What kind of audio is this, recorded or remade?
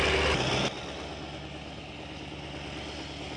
recorded